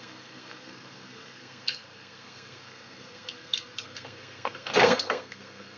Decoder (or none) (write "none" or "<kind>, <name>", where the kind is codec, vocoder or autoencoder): codec, SNAC